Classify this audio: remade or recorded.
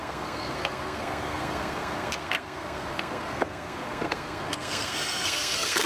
remade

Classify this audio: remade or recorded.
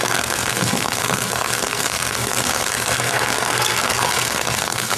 remade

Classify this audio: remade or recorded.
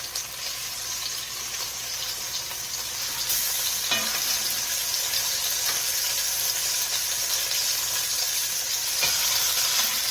recorded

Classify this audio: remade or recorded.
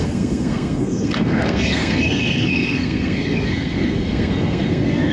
remade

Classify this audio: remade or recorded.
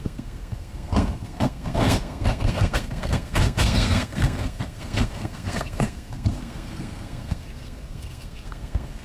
remade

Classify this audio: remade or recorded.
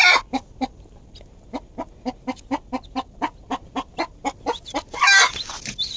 recorded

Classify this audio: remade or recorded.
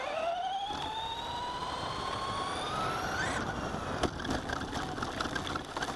recorded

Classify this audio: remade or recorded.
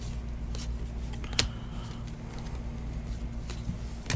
recorded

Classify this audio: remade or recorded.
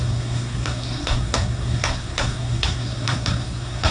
remade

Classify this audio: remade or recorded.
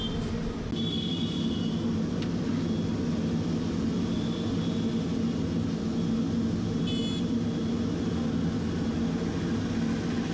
recorded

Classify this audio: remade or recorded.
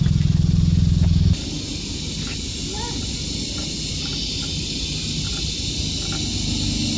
recorded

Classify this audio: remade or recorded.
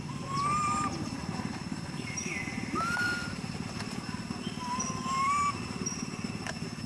recorded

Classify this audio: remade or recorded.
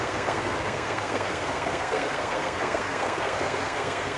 remade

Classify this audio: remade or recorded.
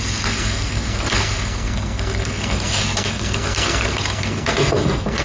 remade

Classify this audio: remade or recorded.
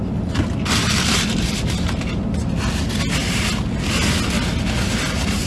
recorded